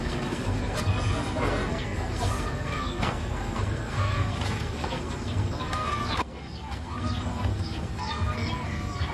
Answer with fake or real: fake